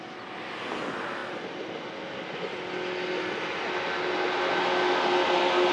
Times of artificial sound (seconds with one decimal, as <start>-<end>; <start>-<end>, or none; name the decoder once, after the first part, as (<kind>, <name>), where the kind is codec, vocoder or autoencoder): none